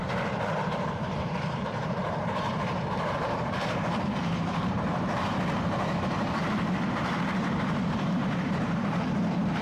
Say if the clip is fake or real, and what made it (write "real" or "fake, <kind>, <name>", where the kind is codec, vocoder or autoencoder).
fake, vocoder, BigVGAN v2